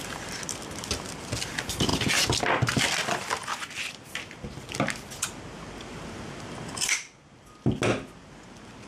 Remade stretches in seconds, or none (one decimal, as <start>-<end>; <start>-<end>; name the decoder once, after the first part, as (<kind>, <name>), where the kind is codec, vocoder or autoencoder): none